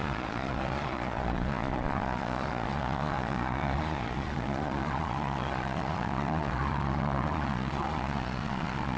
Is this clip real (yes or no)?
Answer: no